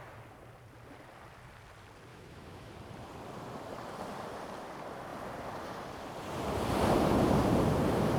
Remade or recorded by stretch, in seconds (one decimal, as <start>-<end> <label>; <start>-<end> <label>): 0.0-2.1 recorded; 2.1-2.7 remade; 2.7-8.2 recorded